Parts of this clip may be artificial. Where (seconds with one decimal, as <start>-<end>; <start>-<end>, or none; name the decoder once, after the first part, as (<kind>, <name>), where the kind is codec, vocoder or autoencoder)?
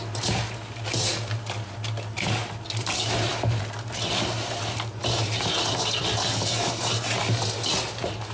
none